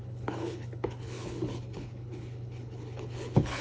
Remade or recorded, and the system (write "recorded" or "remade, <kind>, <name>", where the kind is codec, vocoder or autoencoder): remade, codec, HILCodec